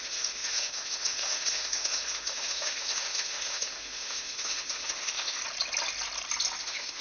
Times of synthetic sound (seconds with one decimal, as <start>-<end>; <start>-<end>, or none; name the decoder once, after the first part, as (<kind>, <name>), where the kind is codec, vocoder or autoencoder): 0.0-5.4 (autoencoder, DAC-VAE); 6.6-7.0